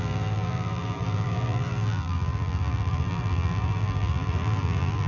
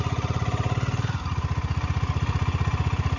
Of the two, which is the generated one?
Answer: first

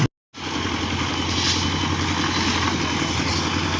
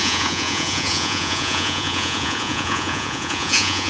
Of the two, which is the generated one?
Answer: second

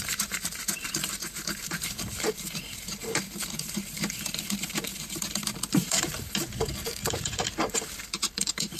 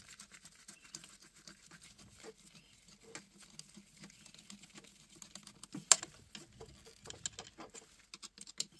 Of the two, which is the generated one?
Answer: first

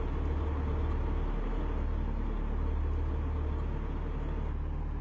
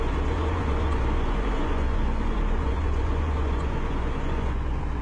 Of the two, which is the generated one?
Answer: second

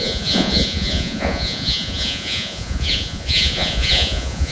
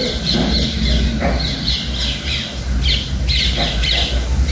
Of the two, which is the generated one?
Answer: first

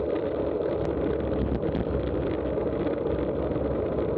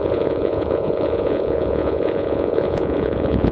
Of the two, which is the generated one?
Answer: second